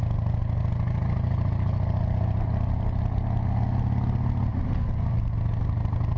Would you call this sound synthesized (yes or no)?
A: no